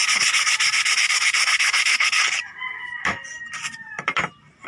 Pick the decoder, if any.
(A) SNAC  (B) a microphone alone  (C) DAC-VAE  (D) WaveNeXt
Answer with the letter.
B